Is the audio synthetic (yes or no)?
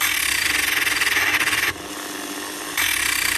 no